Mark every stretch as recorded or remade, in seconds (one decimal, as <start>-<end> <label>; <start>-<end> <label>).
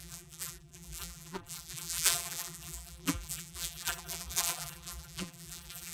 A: 0.0-5.9 remade